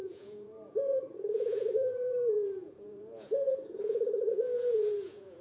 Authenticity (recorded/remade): remade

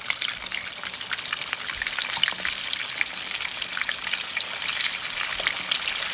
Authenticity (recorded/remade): recorded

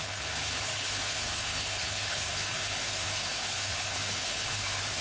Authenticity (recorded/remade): remade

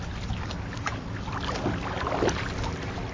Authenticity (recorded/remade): recorded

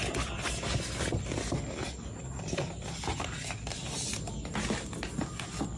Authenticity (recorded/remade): recorded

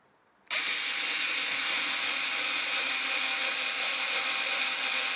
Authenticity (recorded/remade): recorded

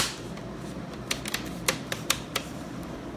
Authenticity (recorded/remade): remade